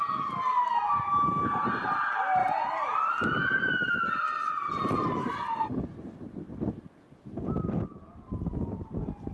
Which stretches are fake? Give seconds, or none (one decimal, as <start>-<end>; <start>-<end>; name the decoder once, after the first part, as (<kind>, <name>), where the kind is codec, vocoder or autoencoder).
2.4-6.8 (vocoder, BigVGAN v2)